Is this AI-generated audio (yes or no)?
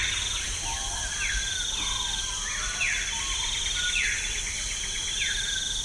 no